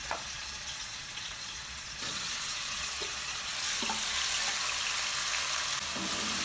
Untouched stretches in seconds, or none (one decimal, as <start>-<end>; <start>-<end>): 3.5-6.4